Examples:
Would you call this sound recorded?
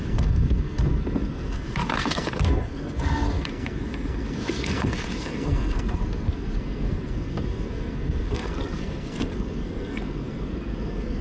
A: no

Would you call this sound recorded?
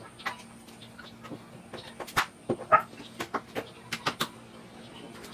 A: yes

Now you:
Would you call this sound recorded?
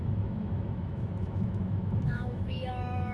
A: no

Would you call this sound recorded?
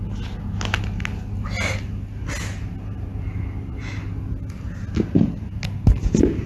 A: yes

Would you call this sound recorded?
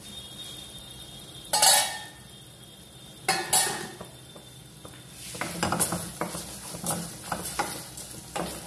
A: yes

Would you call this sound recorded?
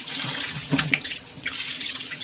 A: no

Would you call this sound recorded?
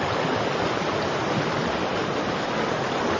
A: yes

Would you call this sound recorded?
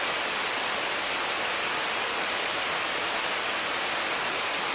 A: yes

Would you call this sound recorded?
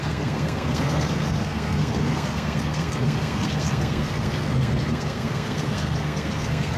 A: no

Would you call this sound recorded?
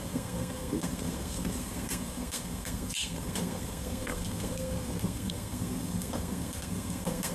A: no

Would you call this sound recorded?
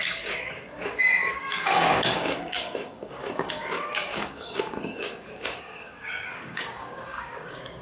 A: no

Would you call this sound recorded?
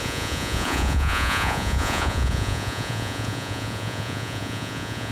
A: no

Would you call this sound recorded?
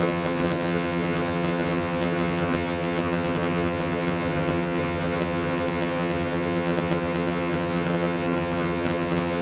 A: no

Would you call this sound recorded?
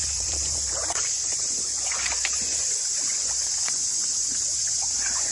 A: no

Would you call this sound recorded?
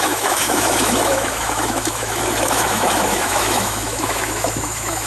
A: no